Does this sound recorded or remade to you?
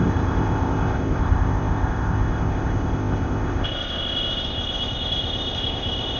remade